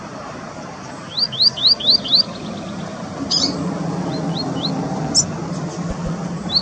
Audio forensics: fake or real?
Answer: real